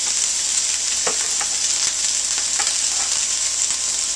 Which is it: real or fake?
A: real